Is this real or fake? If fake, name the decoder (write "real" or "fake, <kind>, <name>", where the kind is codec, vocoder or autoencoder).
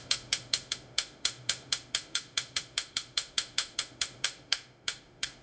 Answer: fake, autoencoder, DAC-VAE